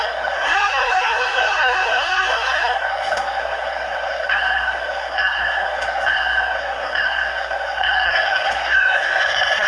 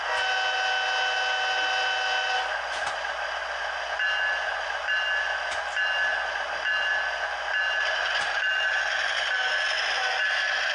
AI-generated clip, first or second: first